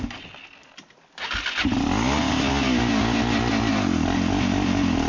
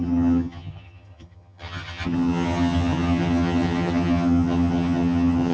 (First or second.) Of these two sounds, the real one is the first